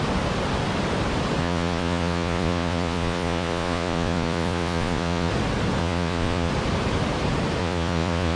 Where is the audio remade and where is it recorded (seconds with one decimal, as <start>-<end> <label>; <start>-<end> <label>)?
0.0-1.4 recorded; 1.4-5.3 remade; 5.3-5.8 recorded; 5.8-6.5 remade; 6.5-7.6 recorded; 7.6-8.4 remade